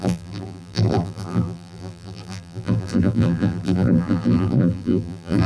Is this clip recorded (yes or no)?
no